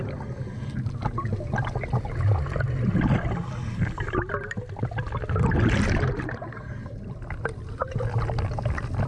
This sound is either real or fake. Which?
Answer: real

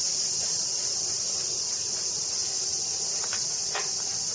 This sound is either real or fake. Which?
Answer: real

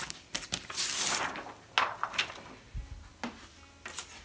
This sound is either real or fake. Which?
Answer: real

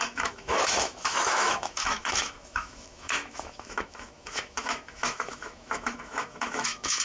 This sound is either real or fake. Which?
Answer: fake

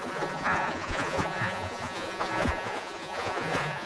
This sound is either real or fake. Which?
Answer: fake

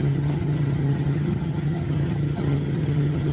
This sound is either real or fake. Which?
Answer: fake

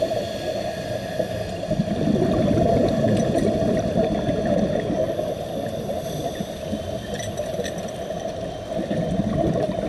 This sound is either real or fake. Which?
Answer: fake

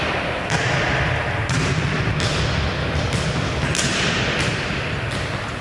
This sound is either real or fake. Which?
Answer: real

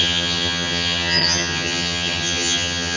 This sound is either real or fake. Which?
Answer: fake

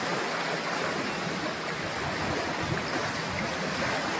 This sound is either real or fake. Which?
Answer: real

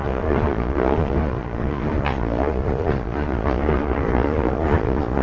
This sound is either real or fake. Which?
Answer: fake